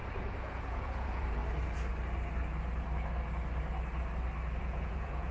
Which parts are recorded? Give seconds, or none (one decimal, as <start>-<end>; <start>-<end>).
0.0-0.5; 1.4-4.6